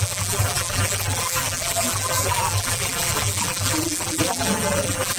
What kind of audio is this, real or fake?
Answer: fake